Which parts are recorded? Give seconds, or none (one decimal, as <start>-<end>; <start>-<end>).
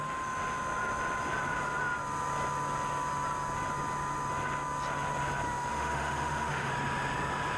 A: 0.0-5.7; 6.7-7.6